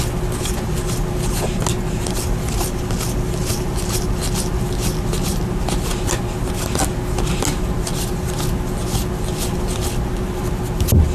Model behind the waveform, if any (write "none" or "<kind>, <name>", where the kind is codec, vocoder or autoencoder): none